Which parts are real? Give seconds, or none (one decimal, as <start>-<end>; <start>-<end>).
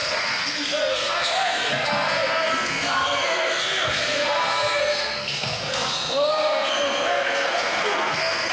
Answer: none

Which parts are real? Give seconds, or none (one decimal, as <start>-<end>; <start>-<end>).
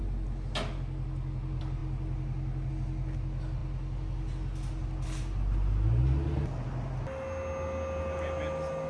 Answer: 0.0-8.9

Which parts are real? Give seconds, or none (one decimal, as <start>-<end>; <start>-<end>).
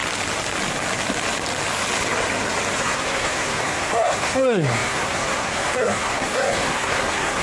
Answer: 0.0-2.8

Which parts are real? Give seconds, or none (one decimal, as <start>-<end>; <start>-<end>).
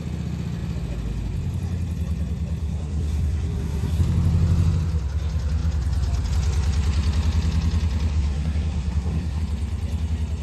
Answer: 0.0-2.6; 4.0-8.1; 9.4-10.4